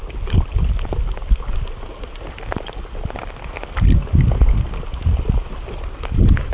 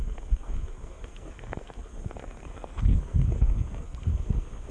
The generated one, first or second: second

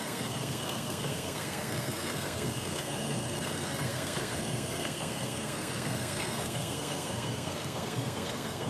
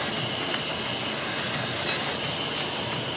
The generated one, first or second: first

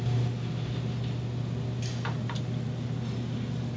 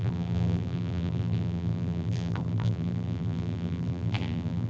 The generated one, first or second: second